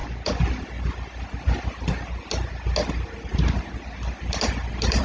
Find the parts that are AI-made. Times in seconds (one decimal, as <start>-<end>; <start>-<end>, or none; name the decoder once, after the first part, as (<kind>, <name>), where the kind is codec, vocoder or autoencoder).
none

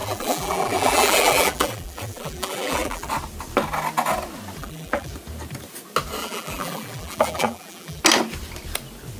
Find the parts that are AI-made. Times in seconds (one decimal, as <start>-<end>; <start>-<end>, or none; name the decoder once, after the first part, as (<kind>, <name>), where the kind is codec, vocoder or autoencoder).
0.0-3.1 (vocoder, BigVGAN v2); 4.6-5.1; 6.2-8.0

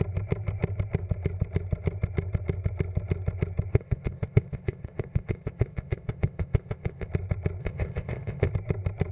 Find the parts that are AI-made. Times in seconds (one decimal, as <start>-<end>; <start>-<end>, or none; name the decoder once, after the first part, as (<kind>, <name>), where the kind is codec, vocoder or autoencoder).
3.7-7.1 (codec, ZipCodec); 7.6-8.5

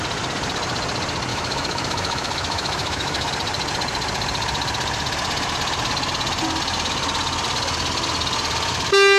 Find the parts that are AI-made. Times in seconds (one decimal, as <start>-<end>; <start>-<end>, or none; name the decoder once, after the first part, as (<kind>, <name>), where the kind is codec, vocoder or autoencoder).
1.3-3.3 (autoencoder, DAC-VAE)

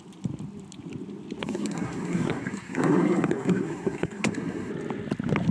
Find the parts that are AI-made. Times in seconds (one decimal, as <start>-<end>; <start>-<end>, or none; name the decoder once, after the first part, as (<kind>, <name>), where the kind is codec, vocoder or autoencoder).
1.4-4.7 (codec, SNAC)